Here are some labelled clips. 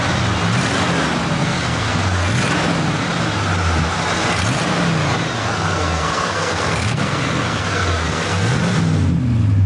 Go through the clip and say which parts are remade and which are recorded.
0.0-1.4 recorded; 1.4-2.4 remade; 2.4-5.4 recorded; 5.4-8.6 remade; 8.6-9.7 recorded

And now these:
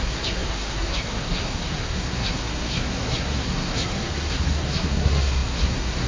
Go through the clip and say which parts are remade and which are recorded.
0.0-6.1 remade

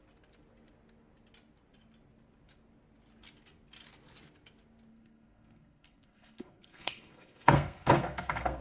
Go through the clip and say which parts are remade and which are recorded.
0.0-4.9 recorded; 4.9-8.6 remade

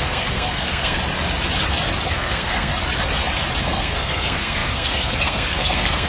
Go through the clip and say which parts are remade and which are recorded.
0.0-1.0 remade; 1.0-2.1 recorded; 2.1-2.7 remade; 2.7-3.6 recorded; 3.6-6.1 remade

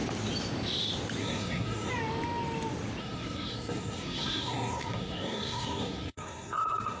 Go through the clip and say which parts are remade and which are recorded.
0.0-1.2 recorded; 1.2-1.9 remade; 1.9-3.0 recorded; 3.0-7.0 remade